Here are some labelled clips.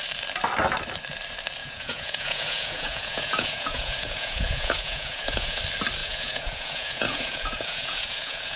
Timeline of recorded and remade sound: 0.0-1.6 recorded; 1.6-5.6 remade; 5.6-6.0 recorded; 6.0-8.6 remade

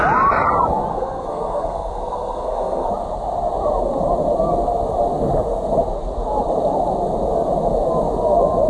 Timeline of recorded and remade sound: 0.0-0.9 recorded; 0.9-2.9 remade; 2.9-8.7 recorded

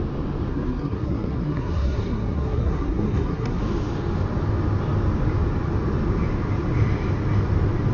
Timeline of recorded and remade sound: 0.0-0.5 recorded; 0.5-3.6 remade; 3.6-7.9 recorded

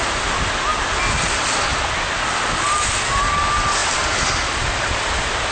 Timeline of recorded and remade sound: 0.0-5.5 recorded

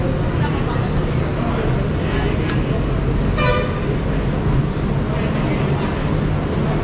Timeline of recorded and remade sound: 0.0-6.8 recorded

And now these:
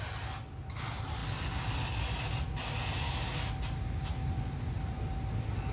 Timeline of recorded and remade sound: 0.0-5.7 recorded